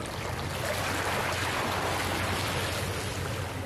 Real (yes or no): yes